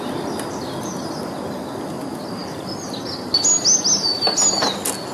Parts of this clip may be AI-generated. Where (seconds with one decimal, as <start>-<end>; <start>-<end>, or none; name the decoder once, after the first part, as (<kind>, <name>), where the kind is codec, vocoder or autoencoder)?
none